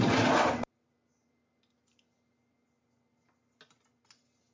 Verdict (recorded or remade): recorded